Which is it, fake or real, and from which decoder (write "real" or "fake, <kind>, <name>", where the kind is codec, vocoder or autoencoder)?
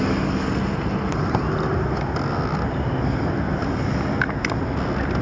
real